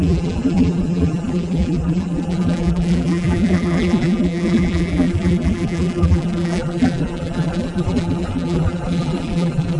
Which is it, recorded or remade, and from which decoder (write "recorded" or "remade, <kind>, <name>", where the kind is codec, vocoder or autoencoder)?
remade, vocoder, BigVGAN v2